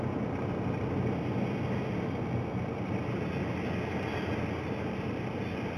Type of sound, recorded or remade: recorded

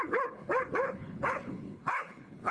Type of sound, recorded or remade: remade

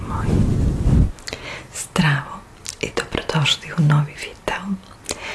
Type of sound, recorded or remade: recorded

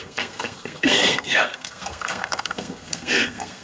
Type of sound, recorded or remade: remade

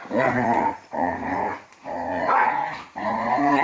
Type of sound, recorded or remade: remade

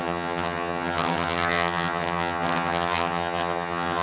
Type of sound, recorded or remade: remade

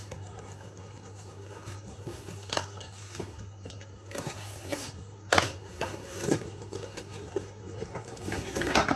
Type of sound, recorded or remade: remade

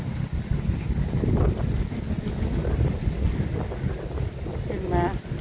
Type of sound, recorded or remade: recorded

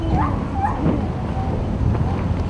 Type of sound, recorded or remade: recorded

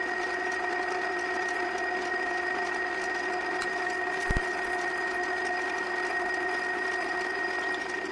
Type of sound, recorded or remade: recorded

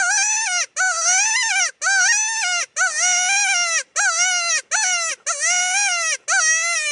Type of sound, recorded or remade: recorded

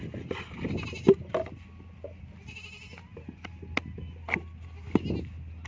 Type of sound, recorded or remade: recorded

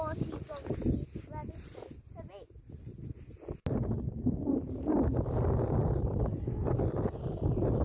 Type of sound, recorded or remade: recorded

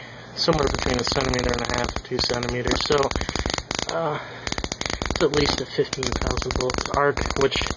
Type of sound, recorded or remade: recorded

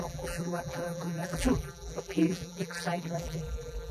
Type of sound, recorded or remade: remade